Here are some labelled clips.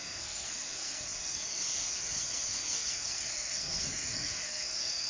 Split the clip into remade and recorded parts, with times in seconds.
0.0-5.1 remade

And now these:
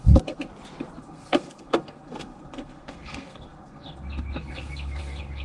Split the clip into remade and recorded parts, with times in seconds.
0.0-0.5 remade; 0.5-1.0 recorded; 1.0-5.4 remade

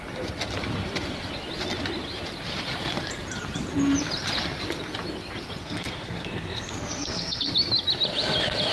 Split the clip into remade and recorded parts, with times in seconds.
0.0-5.6 recorded; 5.6-7.5 remade; 7.5-8.7 recorded

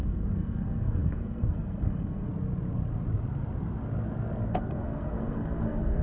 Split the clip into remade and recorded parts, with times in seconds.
0.0-2.3 remade; 2.3-4.5 recorded; 4.5-6.0 remade

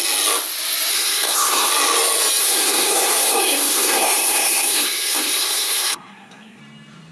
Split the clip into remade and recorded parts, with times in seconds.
0.0-0.9 recorded; 0.9-1.7 remade; 1.7-2.4 recorded; 2.4-6.6 remade; 6.6-7.1 recorded

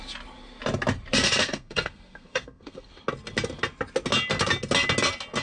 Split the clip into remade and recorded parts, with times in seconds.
0.0-1.4 recorded; 1.4-2.9 remade; 2.9-5.4 recorded

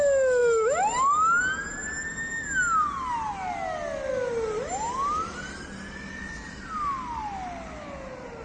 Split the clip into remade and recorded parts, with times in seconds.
0.0-8.4 recorded